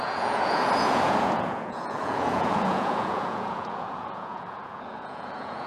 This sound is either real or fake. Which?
fake